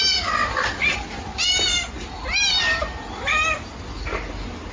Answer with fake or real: real